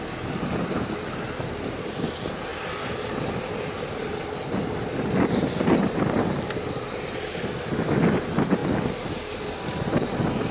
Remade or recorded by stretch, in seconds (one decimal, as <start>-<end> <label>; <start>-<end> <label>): 0.0-10.5 recorded